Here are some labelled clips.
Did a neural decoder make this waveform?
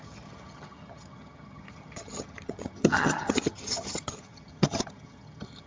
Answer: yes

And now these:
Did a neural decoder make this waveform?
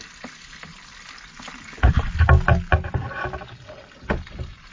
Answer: no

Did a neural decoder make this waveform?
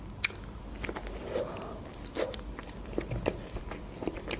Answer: no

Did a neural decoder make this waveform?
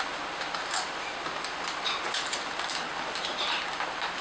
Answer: no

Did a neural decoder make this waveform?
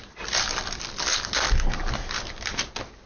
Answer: no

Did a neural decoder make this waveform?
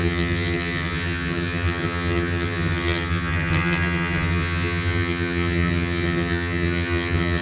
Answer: yes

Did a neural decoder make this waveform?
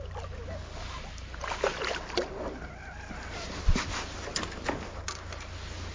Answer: no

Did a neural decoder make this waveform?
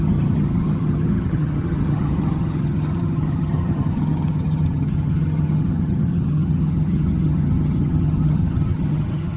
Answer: yes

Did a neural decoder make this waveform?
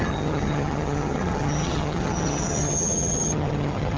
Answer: yes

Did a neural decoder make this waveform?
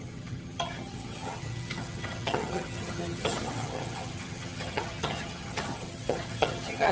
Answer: yes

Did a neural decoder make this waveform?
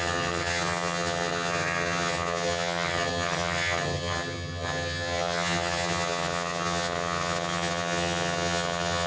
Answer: yes